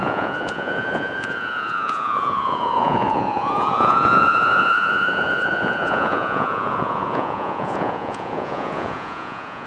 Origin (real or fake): fake